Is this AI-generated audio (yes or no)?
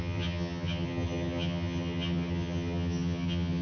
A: yes